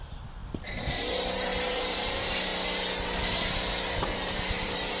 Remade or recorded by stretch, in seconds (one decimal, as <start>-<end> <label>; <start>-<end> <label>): 0.0-2.5 remade; 2.5-4.0 recorded; 4.0-5.0 remade

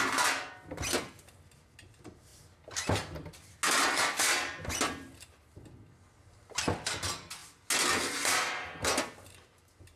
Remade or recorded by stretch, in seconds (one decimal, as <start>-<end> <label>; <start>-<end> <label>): 0.0-10.0 recorded